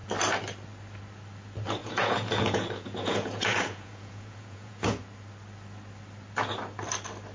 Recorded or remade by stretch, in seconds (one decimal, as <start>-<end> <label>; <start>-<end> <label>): 0.0-1.8 recorded; 1.8-5.0 remade; 5.0-7.3 recorded